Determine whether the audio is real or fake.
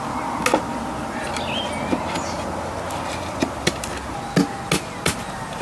real